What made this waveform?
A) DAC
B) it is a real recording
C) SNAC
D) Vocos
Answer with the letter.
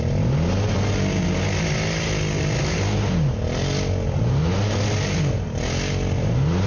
B